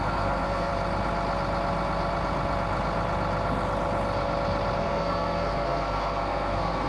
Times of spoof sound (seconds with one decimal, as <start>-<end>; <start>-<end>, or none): 0.0-0.7; 4.8-6.9